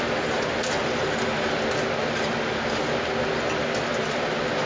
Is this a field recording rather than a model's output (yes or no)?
yes